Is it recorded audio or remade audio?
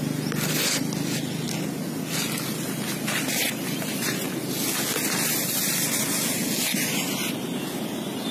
recorded